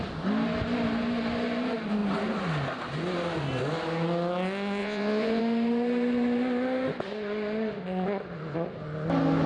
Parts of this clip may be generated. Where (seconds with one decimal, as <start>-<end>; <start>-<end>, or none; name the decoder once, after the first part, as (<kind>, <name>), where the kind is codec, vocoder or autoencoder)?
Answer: 4.8-5.4 (vocoder, Vocos)